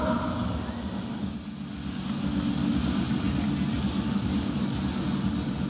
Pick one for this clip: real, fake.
real